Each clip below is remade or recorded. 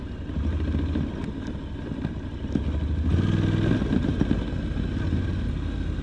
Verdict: recorded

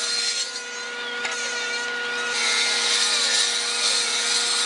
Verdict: recorded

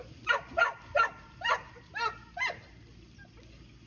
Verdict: recorded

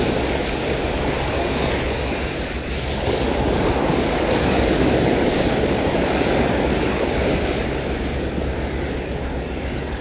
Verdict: remade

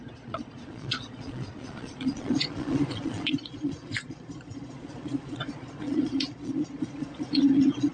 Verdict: remade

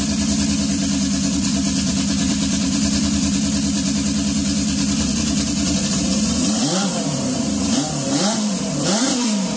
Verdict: remade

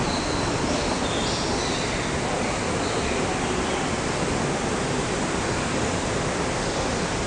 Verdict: recorded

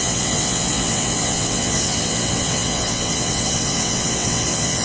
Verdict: remade